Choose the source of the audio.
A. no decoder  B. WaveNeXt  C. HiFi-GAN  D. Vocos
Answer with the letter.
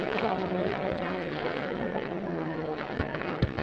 B